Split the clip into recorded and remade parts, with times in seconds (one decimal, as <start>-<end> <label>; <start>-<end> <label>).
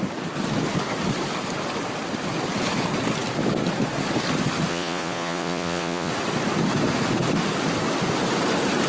0.0-4.7 recorded; 4.7-6.1 remade; 6.1-8.9 recorded